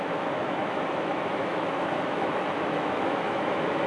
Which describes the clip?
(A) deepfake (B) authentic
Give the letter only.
A